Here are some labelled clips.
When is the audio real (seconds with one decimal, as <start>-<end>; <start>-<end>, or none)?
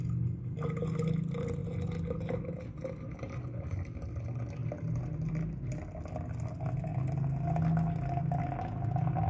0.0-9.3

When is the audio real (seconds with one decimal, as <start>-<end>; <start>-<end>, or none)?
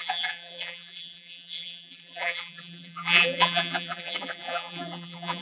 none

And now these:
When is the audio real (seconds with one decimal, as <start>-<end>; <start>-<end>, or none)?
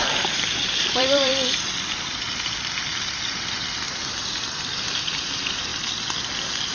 1.3-1.9; 5.7-6.7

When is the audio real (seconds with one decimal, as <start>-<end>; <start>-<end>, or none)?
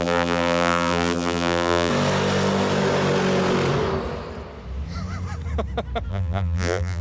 1.9-6.1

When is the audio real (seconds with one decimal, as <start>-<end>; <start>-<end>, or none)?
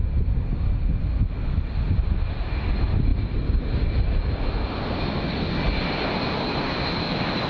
0.0-7.5